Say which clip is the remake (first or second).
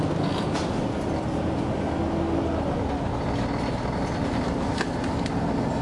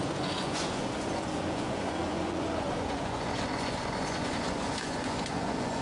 second